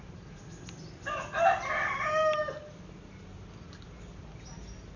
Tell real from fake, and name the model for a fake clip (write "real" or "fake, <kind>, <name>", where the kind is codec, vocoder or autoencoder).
real